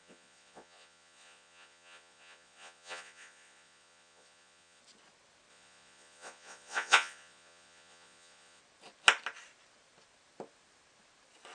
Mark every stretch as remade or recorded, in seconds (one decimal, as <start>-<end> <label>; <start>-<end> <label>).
0.0-4.8 remade; 4.8-5.5 recorded; 5.5-8.6 remade; 8.6-11.5 recorded